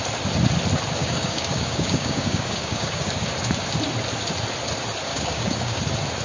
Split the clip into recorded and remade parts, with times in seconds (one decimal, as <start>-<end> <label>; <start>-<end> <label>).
0.0-1.0 recorded; 1.0-3.1 remade; 3.1-5.1 recorded; 5.1-5.8 remade; 5.8-6.2 recorded